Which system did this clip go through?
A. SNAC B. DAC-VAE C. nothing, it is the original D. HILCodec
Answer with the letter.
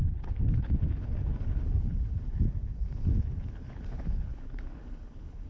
D